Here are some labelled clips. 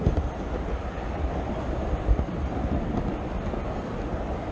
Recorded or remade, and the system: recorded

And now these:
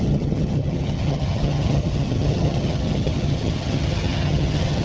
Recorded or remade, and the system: remade, vocoder, HiFi-GAN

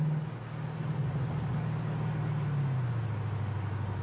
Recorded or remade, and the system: recorded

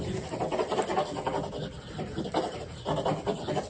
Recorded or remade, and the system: recorded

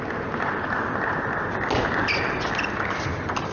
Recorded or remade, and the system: recorded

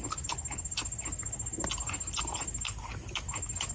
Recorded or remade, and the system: recorded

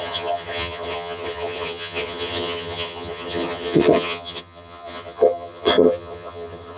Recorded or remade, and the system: remade, vocoder, HiFi-GAN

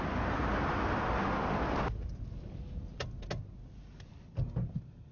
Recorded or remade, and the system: recorded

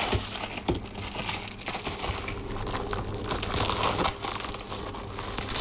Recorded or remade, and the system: recorded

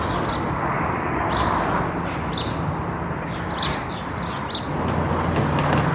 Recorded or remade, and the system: recorded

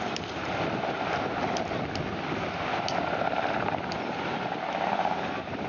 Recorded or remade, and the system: recorded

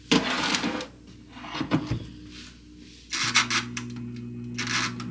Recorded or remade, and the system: recorded